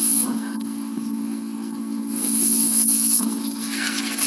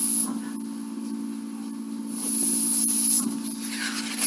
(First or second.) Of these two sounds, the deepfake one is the first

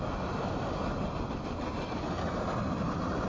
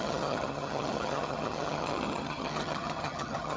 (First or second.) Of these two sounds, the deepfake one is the second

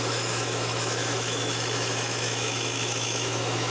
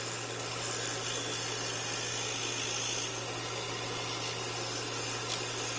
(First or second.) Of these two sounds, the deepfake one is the first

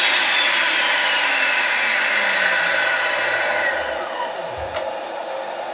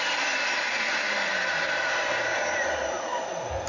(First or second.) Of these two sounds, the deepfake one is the second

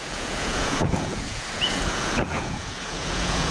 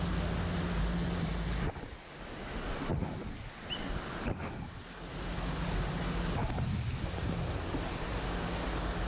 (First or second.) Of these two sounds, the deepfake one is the first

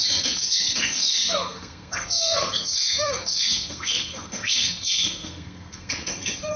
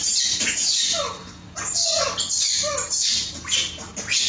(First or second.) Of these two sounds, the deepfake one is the first